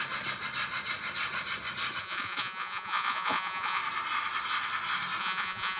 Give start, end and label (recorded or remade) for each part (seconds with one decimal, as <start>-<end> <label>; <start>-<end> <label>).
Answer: 0.0-2.0 recorded; 2.0-3.8 remade; 3.8-5.2 recorded; 5.2-5.8 remade

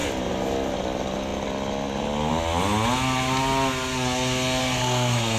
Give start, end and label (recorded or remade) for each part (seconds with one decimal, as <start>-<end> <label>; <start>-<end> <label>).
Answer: 0.0-4.6 recorded; 4.6-5.4 remade

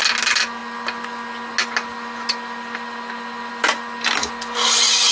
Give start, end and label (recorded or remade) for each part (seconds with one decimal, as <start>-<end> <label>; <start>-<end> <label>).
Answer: 0.0-5.1 recorded